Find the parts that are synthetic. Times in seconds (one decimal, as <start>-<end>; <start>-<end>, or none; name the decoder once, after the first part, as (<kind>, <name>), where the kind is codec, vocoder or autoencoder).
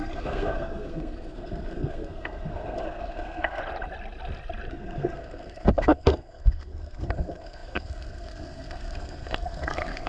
0.0-3.6 (codec, SNAC); 4.7-10.1